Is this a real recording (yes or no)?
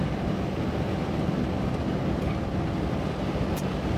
yes